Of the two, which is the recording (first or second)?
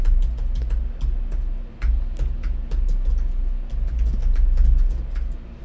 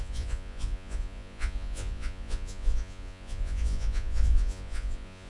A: first